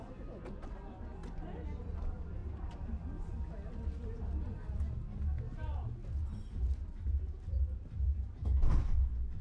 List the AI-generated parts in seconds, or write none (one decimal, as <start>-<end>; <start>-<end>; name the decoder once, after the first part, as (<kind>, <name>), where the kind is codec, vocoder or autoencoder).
none